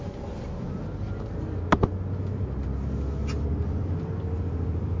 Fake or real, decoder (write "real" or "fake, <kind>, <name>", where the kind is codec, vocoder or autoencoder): real